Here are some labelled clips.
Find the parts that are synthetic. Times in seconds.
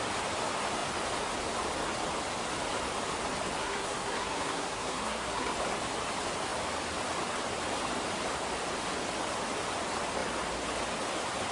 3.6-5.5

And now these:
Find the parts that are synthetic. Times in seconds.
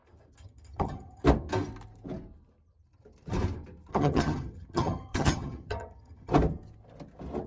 0.4-1.2; 3.9-6.3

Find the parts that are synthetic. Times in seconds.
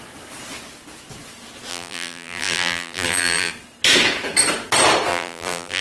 1.7-3.5; 5.1-5.8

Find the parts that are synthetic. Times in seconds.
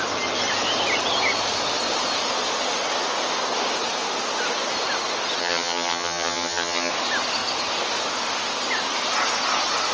5.4-6.9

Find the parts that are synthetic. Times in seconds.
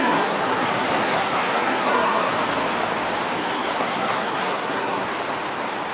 0.0-2.3; 3.4-5.1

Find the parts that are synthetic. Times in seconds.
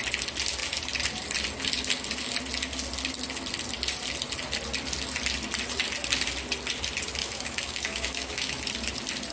7.2-8.6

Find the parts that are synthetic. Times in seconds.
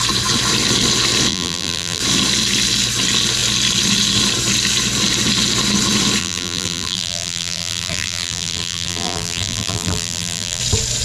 1.3-2.0; 6.2-10.6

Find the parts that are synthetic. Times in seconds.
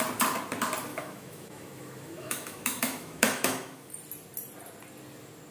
0.9-3.9